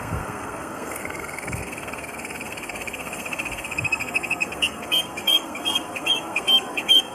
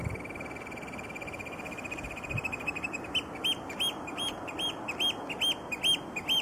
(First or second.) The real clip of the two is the second